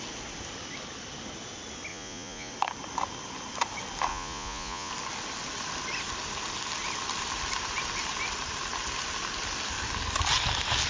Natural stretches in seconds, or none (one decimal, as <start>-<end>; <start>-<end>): 0.0-1.9; 2.5-4.1; 4.9-10.9